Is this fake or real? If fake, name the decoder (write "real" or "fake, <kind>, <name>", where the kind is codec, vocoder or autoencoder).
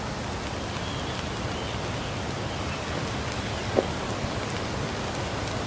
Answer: real